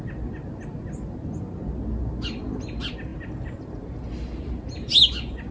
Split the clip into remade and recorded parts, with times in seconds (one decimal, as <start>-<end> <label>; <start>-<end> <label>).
0.0-5.5 recorded